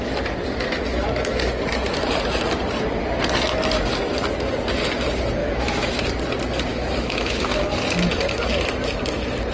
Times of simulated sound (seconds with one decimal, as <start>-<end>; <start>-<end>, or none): 5.4-6.0; 6.7-7.4